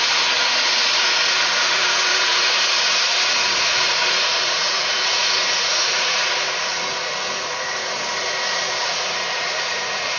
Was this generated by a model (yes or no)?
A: yes